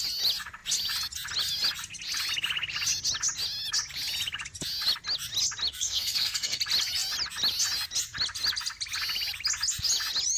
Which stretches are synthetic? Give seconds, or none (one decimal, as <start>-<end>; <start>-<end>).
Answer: 5.7-6.6